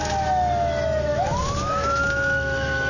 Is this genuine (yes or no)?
no